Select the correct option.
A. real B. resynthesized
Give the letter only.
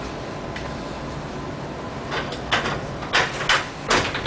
A